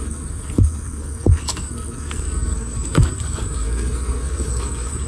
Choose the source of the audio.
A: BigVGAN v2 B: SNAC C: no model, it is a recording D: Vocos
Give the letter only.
B